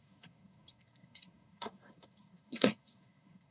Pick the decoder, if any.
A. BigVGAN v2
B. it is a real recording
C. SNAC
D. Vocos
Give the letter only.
C